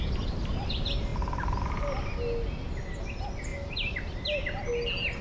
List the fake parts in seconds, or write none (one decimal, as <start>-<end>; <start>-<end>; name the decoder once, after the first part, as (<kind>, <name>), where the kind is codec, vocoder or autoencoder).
none